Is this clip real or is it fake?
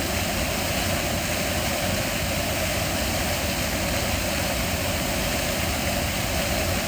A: real